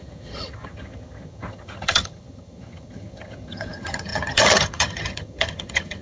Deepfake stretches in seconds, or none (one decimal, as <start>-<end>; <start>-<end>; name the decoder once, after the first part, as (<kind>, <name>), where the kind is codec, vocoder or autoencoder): 0.0-6.0 (vocoder, HiFi-GAN)